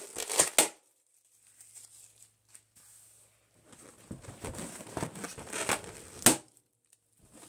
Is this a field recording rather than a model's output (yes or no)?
yes